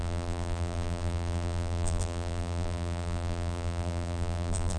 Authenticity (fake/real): fake